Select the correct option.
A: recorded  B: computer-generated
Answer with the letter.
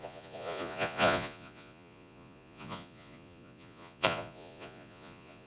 B